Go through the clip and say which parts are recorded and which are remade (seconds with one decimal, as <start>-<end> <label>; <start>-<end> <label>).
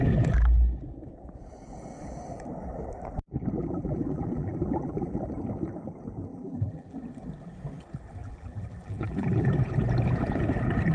0.0-3.6 recorded; 3.6-5.2 remade; 5.2-6.3 recorded; 6.3-7.0 remade; 7.0-8.2 recorded; 8.2-9.5 remade; 9.5-10.9 recorded